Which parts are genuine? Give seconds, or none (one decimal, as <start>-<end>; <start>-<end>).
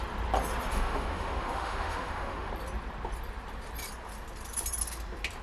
0.0-0.7; 2.5-5.4